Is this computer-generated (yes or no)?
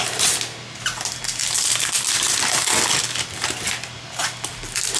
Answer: no